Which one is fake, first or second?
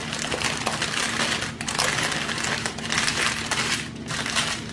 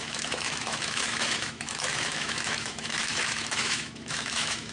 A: second